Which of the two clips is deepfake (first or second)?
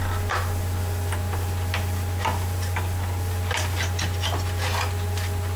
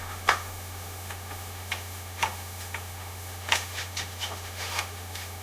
second